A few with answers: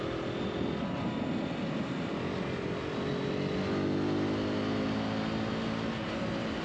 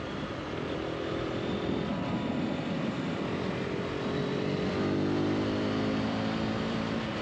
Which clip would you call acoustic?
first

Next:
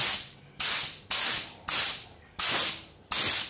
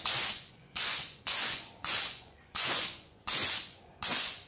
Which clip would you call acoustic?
first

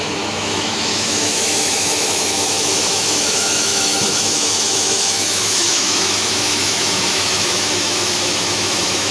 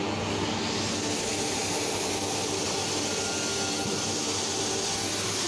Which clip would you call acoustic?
second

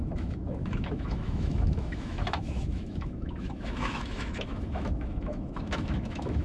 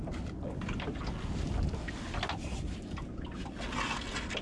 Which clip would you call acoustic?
second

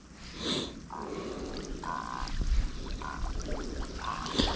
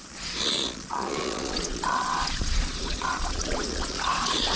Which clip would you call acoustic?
first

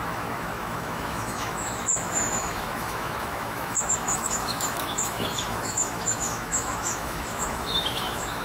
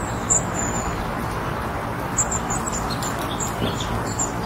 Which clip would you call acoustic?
second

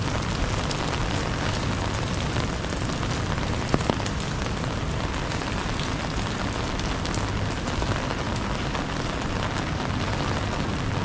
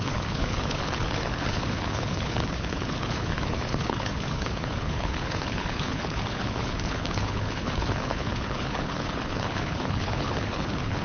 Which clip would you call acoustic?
first